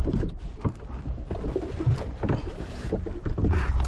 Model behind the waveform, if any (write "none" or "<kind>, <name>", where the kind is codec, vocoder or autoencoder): none